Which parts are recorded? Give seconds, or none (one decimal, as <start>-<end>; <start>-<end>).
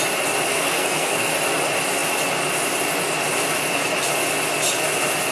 0.0-0.5; 1.3-5.3